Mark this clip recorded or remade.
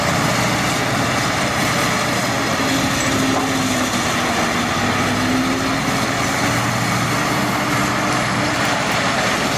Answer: recorded